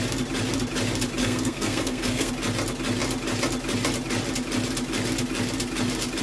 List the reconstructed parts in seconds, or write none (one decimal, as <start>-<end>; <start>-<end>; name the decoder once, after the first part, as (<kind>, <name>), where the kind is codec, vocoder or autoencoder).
1.2-2.3 (codec, SNAC)